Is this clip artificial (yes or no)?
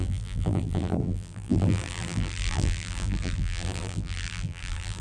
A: yes